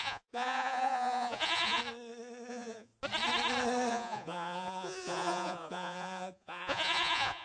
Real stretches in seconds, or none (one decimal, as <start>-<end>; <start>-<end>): 1.8-2.5; 2.9-3.9

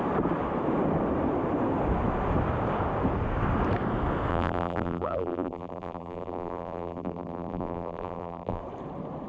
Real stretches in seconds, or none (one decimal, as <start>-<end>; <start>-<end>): 0.0-4.3; 8.6-9.3

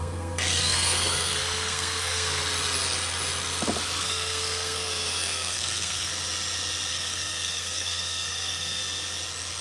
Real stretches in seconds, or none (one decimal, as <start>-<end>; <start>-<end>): 2.4-4.0; 6.1-6.9; 8.8-9.6

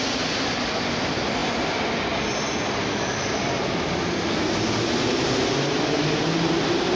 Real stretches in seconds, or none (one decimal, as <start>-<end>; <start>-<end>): 0.0-7.0

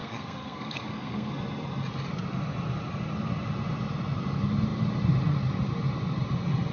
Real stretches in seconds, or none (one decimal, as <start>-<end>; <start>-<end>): 1.3-6.7

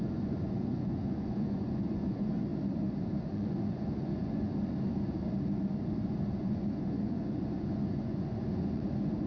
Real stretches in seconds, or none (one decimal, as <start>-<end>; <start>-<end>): 2.5-3.2; 4.5-6.4

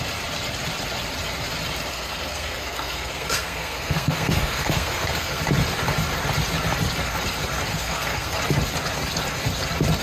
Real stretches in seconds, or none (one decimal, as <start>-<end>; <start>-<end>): 0.0-1.9; 5.4-7.7; 8.4-10.0

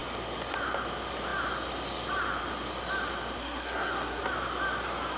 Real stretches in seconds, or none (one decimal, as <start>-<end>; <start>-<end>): 0.0-3.4; 4.2-5.2